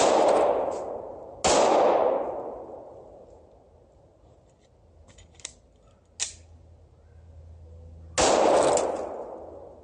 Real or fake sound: real